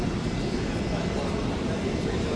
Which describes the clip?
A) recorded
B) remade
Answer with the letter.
A